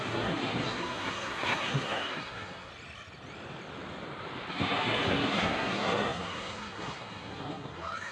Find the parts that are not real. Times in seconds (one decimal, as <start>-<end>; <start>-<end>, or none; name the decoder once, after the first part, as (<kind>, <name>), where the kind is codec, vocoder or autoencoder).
0.0-2.7 (codec, SNAC); 4.5-8.1

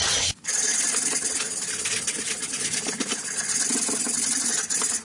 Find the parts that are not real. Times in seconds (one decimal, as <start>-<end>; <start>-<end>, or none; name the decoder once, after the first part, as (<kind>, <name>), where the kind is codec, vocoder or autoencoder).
none

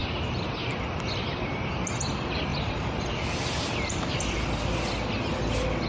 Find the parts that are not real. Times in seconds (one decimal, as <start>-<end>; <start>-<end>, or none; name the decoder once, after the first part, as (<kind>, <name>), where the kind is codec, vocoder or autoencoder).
0.0-0.7 (vocoder, BigVGAN v2); 2.5-4.2